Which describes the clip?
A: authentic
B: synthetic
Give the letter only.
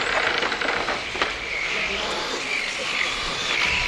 A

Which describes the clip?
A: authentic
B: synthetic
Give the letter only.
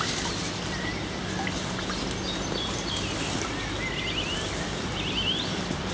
A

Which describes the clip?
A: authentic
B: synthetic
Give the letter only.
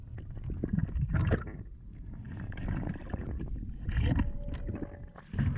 A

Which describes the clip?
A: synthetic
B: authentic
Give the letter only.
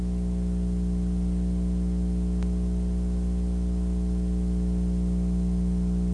B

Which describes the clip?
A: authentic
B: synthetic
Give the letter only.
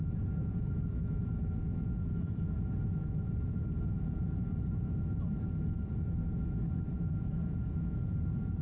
B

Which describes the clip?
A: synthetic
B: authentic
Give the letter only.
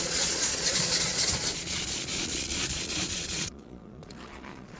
A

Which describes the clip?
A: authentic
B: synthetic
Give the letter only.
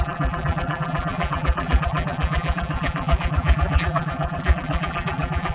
B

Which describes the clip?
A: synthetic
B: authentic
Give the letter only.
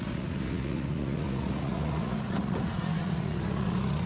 A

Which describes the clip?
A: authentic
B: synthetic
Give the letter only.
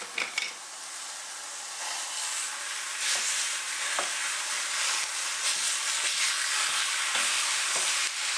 A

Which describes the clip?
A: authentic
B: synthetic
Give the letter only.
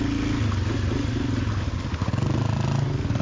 A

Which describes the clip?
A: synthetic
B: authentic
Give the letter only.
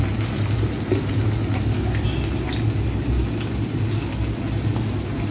B